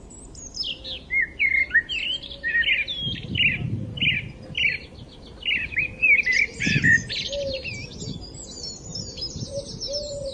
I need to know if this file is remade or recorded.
recorded